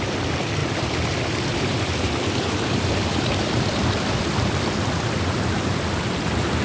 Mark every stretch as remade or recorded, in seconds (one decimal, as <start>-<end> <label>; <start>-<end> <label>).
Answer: 0.0-0.6 recorded; 0.6-4.6 remade; 4.6-6.6 recorded